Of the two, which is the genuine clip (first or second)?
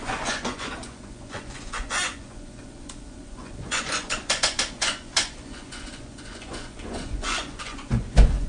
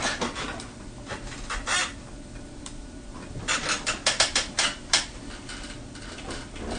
second